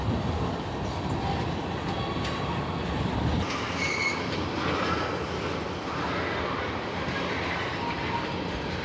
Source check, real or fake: real